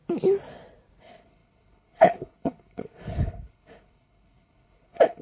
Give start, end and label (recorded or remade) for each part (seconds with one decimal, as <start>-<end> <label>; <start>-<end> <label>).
0.0-1.0 recorded; 1.0-5.2 remade